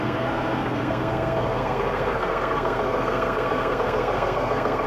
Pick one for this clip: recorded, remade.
remade